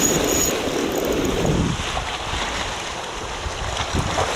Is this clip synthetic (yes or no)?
no